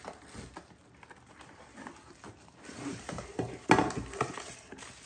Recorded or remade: recorded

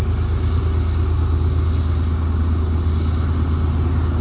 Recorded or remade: recorded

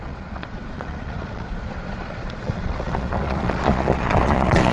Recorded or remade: remade